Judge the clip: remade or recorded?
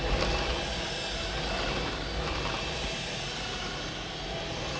recorded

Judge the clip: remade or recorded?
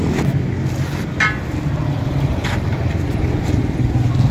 recorded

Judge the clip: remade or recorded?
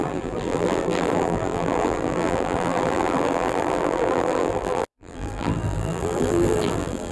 remade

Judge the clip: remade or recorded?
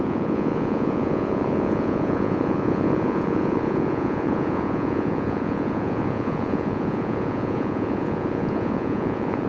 remade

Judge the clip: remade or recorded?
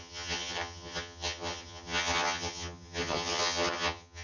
remade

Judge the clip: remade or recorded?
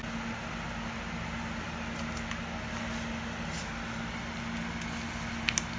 recorded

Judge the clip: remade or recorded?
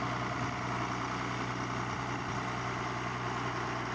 recorded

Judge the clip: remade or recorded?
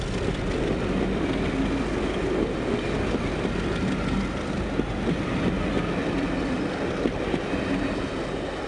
recorded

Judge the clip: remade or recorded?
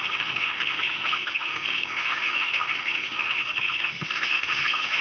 remade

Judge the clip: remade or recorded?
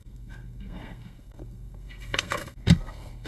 remade